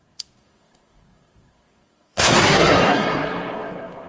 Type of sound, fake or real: fake